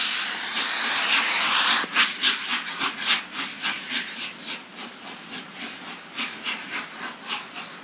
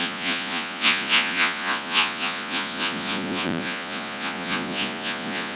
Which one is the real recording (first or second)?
first